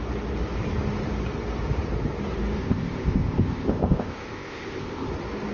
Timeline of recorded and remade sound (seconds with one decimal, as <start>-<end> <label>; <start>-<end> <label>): 0.0-2.6 recorded; 2.6-5.1 remade; 5.1-5.5 recorded